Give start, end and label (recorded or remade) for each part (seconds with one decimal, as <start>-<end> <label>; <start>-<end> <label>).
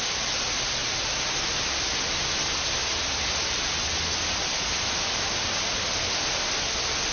0.0-7.1 recorded